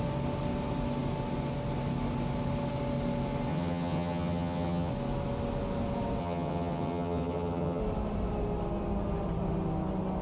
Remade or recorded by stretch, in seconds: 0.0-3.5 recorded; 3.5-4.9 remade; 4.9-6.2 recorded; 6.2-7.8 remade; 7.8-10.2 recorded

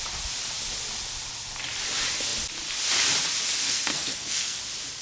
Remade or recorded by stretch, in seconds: 0.0-3.6 recorded; 3.6-4.6 remade; 4.6-5.0 recorded

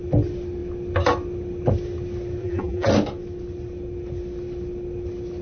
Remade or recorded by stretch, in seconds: 0.0-2.4 recorded; 2.4-2.9 remade; 2.9-5.4 recorded